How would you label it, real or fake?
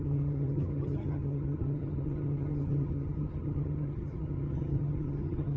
fake